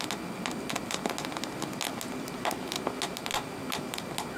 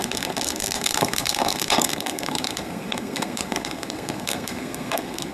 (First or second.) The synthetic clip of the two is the second